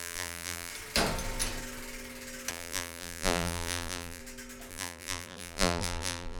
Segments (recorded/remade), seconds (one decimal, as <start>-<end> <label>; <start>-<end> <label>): 0.0-0.7 remade; 0.7-2.5 recorded; 2.5-4.2 remade; 4.2-4.7 recorded; 4.7-6.4 remade